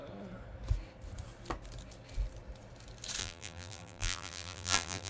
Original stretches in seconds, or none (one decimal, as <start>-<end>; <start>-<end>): 0.0-3.2